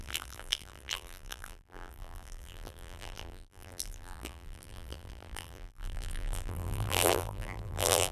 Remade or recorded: remade